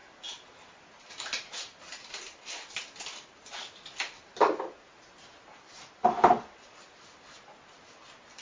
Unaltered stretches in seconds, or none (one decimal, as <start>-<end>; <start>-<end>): 0.0-8.4